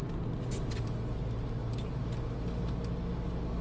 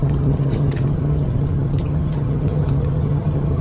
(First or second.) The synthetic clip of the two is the second